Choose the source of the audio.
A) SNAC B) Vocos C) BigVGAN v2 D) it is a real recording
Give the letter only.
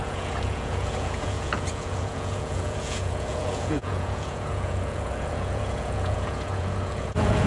B